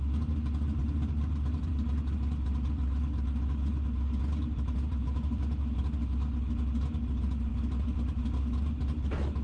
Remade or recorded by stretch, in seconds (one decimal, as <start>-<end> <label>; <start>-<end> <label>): 0.0-0.8 recorded; 0.8-1.7 remade; 1.7-7.5 recorded; 7.5-8.4 remade; 8.4-9.4 recorded